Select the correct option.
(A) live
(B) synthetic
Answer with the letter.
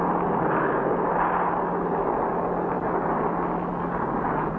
A